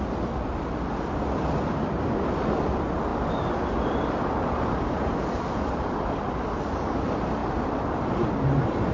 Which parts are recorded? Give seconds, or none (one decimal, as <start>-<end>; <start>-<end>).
0.0-8.9